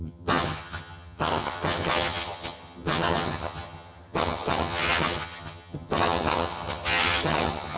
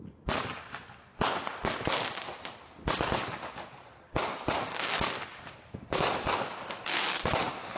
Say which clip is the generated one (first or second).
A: first